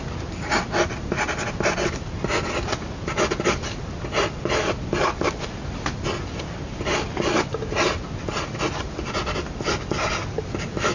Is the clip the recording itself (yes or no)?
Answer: yes